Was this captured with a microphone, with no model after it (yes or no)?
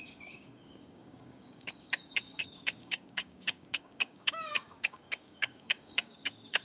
no